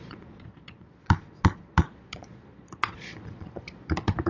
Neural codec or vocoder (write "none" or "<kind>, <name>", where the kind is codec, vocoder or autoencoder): vocoder, Vocos